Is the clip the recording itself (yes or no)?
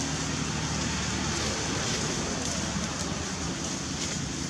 yes